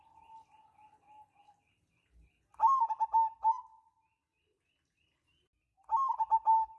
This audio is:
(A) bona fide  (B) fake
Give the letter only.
A